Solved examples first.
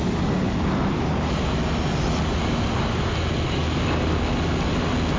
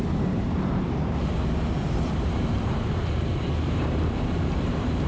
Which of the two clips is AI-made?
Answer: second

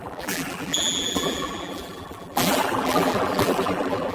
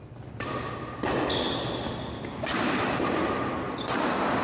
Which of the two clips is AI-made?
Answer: first